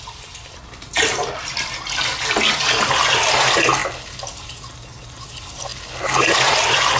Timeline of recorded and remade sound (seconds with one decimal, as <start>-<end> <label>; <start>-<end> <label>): 0.0-7.0 recorded